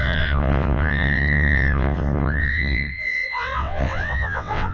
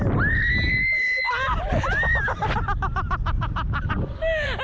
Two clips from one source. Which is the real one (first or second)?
second